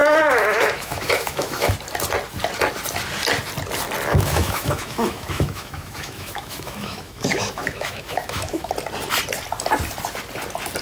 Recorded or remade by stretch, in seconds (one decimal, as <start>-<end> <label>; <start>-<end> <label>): 0.0-1.7 remade; 1.7-4.1 recorded; 4.1-8.7 remade; 8.7-10.8 recorded